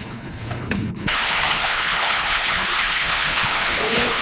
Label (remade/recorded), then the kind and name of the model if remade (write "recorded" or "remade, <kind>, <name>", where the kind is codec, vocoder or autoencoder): remade, codec, HILCodec